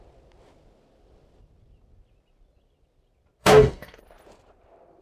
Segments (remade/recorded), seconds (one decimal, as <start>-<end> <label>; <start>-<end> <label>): 0.0-3.4 recorded; 3.4-4.0 remade; 4.0-5.0 recorded